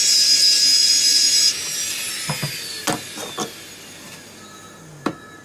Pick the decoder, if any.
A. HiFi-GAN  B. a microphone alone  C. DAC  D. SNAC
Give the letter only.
B